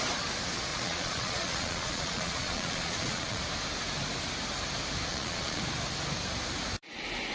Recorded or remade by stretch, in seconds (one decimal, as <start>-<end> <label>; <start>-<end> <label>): 0.0-0.7 recorded; 0.7-3.4 remade; 3.4-5.1 recorded; 5.1-5.6 remade; 5.6-7.3 recorded